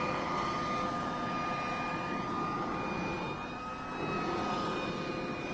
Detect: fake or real real